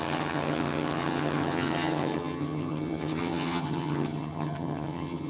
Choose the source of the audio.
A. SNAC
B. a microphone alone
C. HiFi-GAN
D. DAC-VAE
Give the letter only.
C